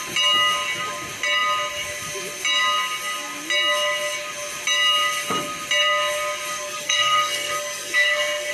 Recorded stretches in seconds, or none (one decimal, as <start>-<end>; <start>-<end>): 0.0-6.6